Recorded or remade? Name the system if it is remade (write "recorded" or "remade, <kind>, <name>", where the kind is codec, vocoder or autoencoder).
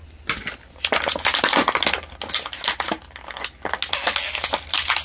recorded